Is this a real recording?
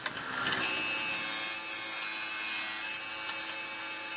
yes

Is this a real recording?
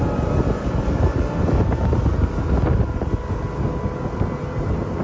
yes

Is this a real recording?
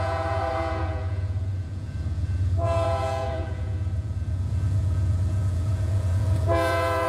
no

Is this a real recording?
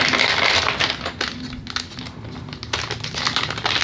yes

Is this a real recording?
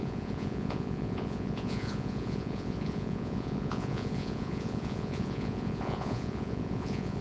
no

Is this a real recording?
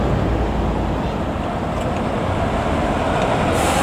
yes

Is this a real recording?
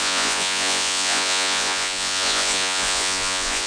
no